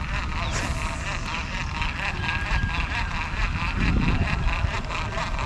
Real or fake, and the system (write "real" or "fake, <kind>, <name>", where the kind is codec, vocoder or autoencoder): real